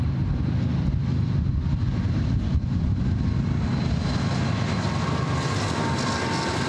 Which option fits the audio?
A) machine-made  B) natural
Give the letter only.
B